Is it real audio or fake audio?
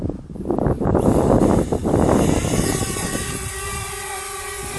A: real